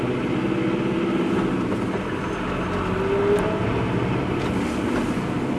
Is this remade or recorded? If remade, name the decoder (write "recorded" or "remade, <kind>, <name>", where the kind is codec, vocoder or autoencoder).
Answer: recorded